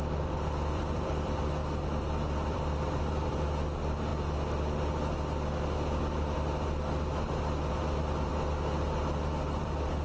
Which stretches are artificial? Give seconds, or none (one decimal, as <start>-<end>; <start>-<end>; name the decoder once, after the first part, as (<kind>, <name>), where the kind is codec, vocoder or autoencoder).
0.0-4.1 (vocoder, BigVGAN v2); 7.7-8.3; 9.6-10.0